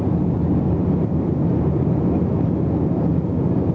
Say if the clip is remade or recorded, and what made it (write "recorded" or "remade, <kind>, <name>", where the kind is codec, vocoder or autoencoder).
recorded